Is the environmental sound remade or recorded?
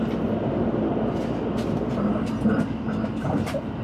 recorded